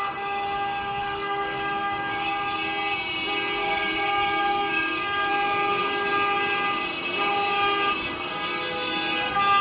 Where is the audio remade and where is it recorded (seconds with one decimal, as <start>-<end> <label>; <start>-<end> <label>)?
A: 0.0-1.0 recorded; 1.0-2.3 remade; 2.3-3.6 recorded; 3.6-5.3 remade; 5.3-9.6 recorded